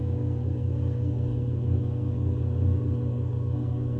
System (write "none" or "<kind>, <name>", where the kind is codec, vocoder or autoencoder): codec, SNAC